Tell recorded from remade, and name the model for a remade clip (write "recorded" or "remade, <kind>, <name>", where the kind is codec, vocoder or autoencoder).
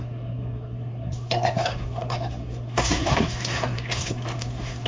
remade, codec, SNAC